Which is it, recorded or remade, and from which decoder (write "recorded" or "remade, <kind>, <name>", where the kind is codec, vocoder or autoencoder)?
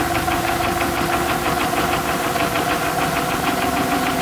recorded